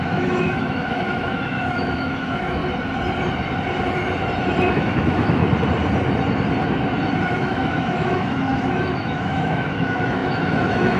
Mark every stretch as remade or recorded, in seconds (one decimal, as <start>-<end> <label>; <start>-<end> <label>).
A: 0.0-2.6 remade; 2.6-4.7 recorded; 4.7-5.4 remade; 5.4-7.2 recorded; 7.2-11.0 remade